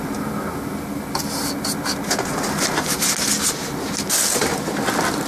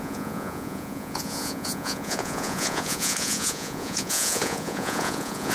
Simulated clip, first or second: second